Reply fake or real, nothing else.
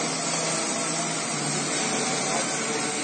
real